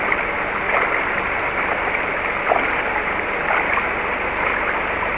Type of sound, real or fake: real